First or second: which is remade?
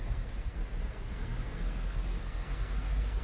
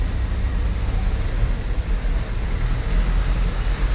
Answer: first